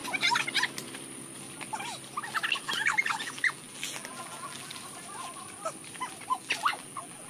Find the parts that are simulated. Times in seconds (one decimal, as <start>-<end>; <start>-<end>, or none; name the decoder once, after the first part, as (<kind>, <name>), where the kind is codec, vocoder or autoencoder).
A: 2.6-4.7 (vocoder, BigVGAN v2); 6.3-7.3